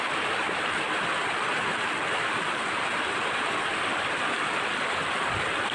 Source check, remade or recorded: remade